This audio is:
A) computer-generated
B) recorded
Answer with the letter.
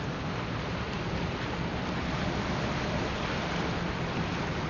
B